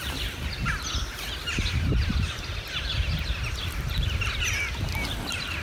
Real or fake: real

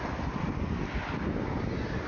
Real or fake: real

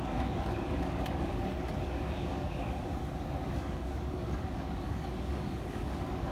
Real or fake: fake